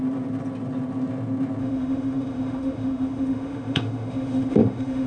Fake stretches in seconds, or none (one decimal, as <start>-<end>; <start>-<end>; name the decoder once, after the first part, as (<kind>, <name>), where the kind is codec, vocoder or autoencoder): 1.6-5.1 (autoencoder, DAC-VAE)